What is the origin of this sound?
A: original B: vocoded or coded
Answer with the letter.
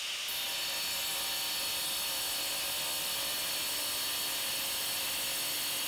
A